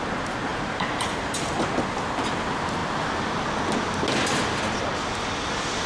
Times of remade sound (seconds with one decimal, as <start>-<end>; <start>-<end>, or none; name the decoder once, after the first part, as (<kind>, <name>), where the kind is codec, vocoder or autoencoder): 0.5-1.7 (vocoder, BigVGAN v2)